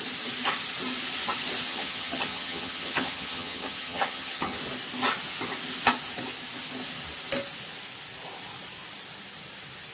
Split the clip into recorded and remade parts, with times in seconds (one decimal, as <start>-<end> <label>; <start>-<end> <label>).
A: 0.0-1.7 recorded; 1.7-4.6 remade; 4.6-9.9 recorded